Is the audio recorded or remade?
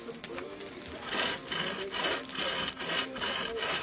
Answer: recorded